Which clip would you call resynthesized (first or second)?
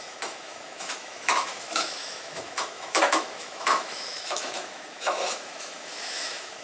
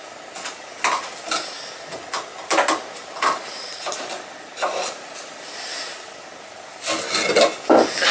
first